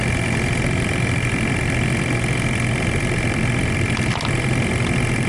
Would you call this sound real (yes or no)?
no